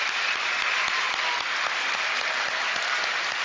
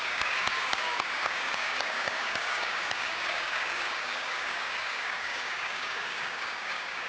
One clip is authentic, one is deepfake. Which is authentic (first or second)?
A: first